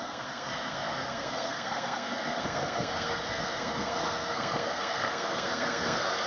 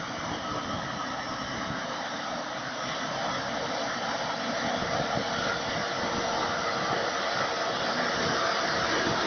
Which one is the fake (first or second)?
first